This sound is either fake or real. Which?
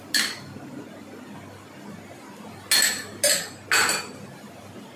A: real